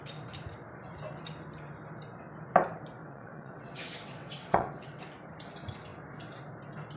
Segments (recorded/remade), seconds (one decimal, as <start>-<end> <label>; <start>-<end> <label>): 0.0-3.0 recorded; 3.0-5.0 remade; 5.0-7.0 recorded